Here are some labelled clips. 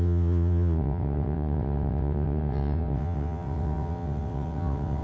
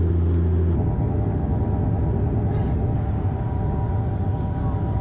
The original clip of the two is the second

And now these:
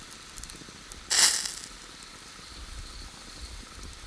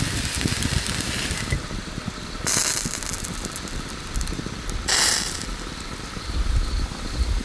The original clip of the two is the first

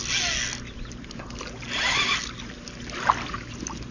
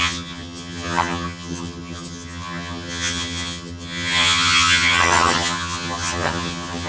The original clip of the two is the first